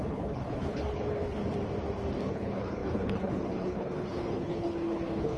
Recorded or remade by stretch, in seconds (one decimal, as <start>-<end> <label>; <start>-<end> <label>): 0.0-1.4 remade; 1.4-2.2 recorded; 2.2-5.4 remade